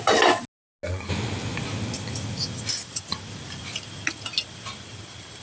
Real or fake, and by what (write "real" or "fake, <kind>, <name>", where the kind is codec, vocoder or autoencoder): real